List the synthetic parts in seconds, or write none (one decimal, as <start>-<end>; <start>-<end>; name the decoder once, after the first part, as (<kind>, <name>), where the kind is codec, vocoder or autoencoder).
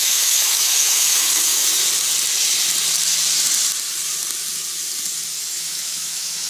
0.0-1.6 (autoencoder, DAC-VAE); 5.5-6.5